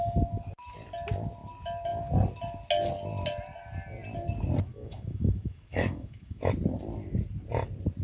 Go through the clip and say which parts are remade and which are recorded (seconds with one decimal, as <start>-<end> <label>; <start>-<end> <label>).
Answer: 0.0-4.7 recorded; 4.7-6.5 remade; 6.5-8.0 recorded